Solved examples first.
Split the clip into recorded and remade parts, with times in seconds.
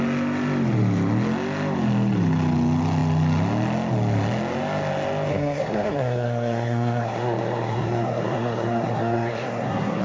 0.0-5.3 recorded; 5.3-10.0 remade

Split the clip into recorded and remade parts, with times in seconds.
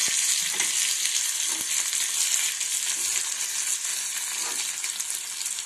0.0-5.7 recorded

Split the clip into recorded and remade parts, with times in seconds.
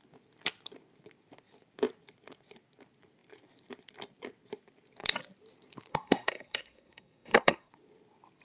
0.0-5.9 recorded; 5.9-7.7 remade; 7.7-8.4 recorded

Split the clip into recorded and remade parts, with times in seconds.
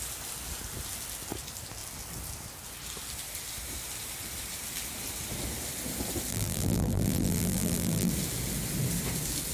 0.0-6.3 recorded; 6.3-8.1 remade; 8.1-9.5 recorded